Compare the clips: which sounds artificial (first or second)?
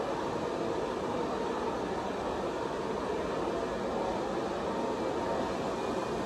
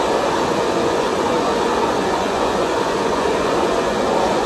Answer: second